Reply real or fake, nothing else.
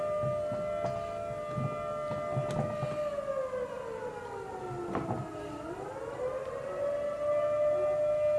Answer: real